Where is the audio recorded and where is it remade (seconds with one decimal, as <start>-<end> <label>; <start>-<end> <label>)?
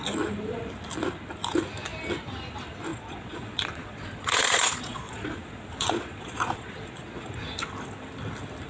0.0-2.9 recorded; 2.9-7.4 remade; 7.4-8.7 recorded